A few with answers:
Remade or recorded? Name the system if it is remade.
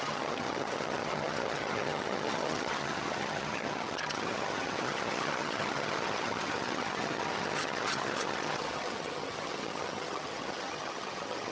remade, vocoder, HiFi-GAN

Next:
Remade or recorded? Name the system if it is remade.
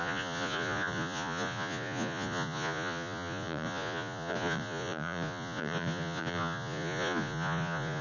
remade, vocoder, Vocos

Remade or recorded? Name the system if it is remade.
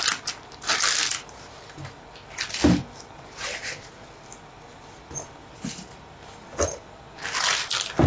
recorded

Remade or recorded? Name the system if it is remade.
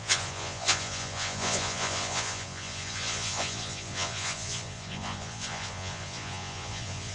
remade, vocoder, Vocos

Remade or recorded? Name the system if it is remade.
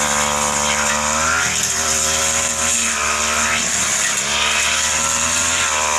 recorded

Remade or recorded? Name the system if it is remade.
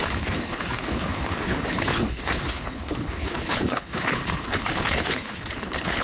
remade, codec, HILCodec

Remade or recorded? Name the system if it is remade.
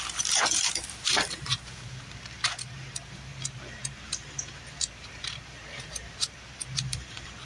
remade, vocoder, BigVGAN v2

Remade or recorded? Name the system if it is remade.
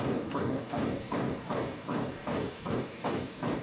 remade, codec, DAC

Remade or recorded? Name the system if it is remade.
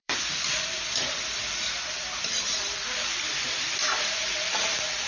remade, vocoder, BigVGAN v2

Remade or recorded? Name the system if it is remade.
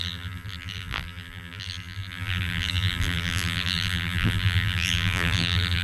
remade, vocoder, BigVGAN v2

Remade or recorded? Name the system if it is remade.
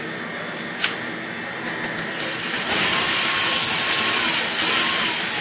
recorded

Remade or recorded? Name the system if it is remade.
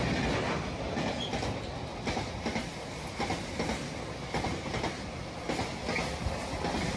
recorded